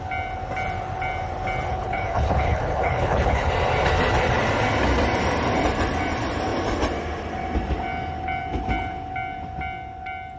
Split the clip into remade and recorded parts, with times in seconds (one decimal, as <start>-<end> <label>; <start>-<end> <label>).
0.0-1.7 recorded; 1.7-3.5 remade; 3.5-10.4 recorded